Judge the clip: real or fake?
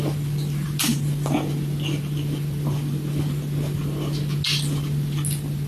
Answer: real